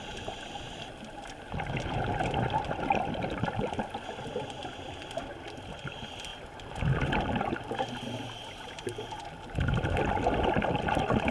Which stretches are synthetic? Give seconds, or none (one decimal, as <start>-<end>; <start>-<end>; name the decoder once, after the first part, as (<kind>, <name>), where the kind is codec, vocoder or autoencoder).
none